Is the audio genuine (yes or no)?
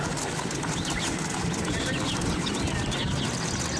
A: yes